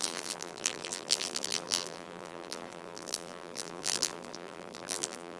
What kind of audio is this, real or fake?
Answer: fake